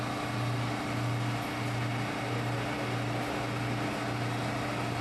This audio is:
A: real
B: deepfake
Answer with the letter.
A